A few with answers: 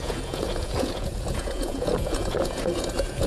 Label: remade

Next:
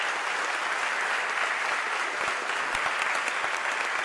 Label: recorded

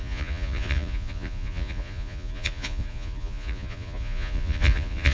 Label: remade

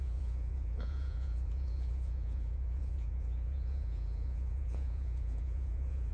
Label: remade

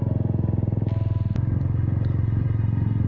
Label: recorded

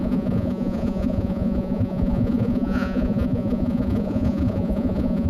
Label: remade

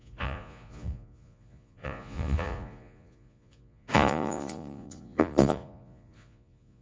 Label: remade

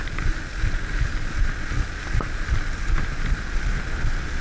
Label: recorded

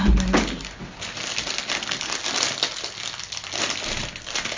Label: recorded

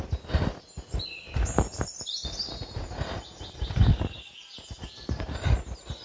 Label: recorded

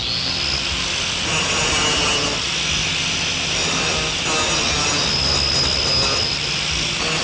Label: recorded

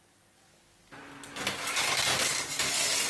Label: recorded